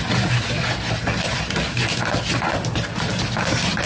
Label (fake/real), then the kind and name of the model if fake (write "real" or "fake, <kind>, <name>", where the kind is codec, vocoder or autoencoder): real